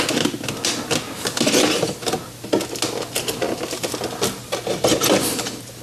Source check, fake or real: real